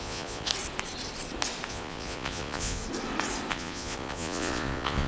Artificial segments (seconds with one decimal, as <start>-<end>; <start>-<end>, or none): 0.0-0.5; 1.7-2.8; 3.5-5.1